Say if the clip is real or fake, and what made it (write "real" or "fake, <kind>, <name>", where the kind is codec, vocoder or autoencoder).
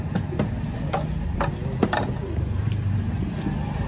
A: real